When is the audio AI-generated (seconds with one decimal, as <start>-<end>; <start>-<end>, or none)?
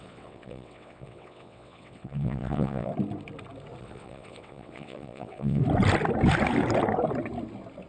0.0-2.9; 3.8-5.6